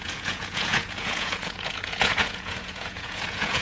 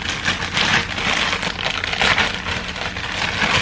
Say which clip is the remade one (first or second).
first